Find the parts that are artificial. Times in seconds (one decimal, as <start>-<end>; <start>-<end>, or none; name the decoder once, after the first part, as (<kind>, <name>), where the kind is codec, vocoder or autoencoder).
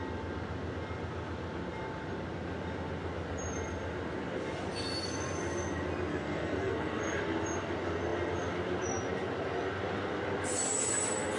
6.1-7.0 (codec, SNAC)